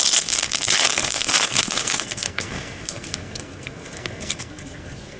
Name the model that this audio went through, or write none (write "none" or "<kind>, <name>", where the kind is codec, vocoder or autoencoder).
codec, SNAC